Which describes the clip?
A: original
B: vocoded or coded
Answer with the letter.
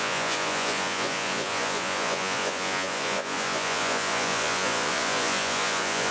B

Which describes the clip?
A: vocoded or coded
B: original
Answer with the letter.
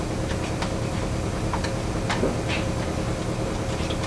B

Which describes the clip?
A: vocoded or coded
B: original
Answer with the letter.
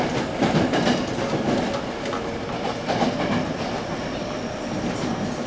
B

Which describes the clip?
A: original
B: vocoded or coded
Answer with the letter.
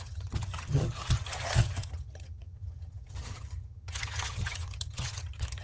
B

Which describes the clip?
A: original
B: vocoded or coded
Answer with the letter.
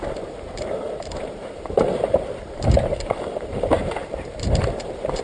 B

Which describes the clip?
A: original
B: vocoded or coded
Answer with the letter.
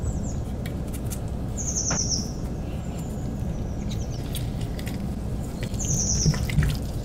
A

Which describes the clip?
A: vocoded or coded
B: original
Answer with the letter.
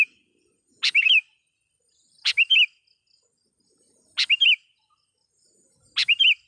B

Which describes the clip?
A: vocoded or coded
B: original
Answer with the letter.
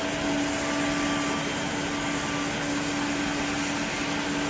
B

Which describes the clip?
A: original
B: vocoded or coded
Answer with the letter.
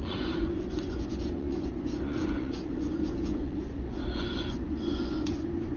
B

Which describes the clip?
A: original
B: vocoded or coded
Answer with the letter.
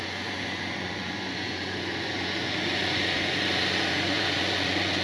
B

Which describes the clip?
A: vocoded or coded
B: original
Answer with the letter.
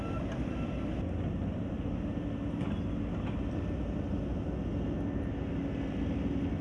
B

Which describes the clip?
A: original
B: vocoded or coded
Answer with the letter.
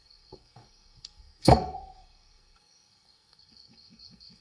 B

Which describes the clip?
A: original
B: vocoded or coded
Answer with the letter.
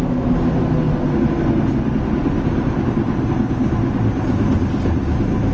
A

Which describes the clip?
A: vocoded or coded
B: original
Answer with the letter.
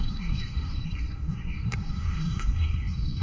A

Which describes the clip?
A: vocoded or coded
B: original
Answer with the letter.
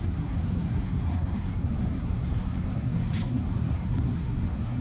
A